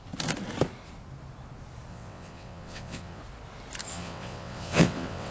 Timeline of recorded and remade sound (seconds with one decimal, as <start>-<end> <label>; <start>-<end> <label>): 0.0-1.9 recorded; 1.9-3.2 remade; 3.2-3.9 recorded; 3.9-5.3 remade